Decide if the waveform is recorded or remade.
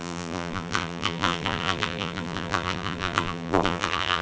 remade